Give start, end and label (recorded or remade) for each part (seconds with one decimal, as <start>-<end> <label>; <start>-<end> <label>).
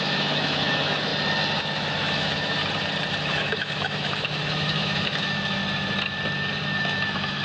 0.0-1.1 remade; 1.1-1.6 recorded; 1.6-2.6 remade; 2.6-3.2 recorded; 3.2-5.6 remade; 5.6-6.8 recorded; 6.8-7.4 remade